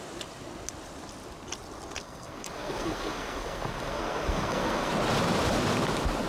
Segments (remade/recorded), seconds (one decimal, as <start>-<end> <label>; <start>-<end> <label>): 0.0-2.0 recorded; 2.0-4.9 remade; 4.9-6.3 recorded